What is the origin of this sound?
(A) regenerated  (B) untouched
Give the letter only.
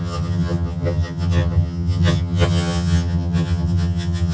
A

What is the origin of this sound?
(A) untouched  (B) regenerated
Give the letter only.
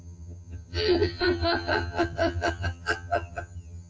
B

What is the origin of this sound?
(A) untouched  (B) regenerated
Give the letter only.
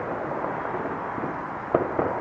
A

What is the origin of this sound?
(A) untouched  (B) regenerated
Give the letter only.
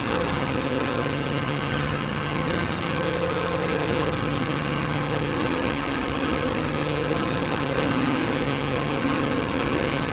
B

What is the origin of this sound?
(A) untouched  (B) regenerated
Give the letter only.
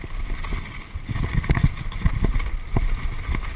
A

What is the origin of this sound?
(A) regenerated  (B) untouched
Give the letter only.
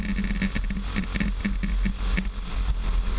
B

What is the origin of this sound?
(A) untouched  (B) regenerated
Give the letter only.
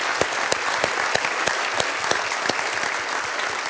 A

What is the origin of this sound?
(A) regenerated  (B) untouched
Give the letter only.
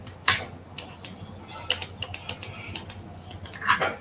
B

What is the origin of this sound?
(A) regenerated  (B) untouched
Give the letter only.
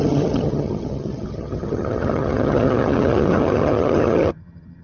A